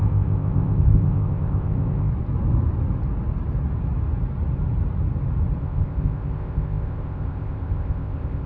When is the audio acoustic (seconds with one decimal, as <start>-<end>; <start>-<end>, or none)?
2.1-5.6